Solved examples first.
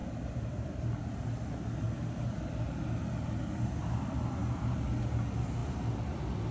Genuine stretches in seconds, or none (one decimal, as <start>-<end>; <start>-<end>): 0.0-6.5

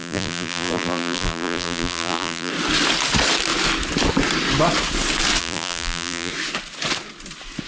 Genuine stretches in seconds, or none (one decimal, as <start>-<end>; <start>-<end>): 2.5-5.4; 6.3-7.7

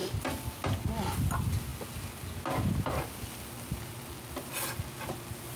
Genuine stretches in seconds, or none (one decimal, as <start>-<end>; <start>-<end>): 0.0-5.6

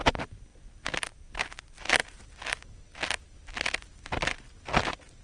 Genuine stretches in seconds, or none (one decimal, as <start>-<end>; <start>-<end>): 0.0-5.2

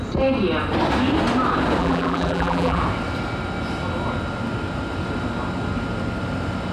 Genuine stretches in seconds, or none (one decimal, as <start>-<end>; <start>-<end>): 0.0-1.8; 2.8-6.7

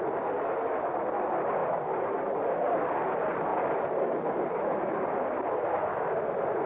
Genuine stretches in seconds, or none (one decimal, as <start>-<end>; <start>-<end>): 0.0-1.6; 2.8-3.5; 5.4-6.7